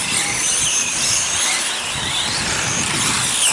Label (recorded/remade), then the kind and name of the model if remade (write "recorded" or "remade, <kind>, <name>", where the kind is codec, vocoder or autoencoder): recorded